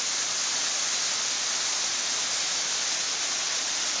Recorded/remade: recorded